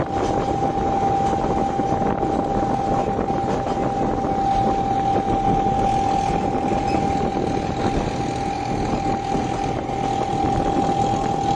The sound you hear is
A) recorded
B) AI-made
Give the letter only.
A